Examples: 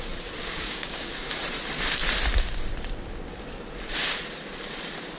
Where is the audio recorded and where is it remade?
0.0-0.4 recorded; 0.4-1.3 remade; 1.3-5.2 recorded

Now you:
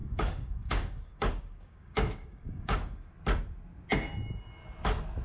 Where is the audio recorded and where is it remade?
0.0-3.1 remade; 3.1-5.2 recorded

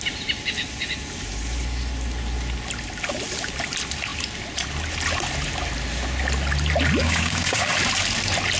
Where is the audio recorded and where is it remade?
0.0-7.0 recorded; 7.0-7.7 remade; 7.7-8.6 recorded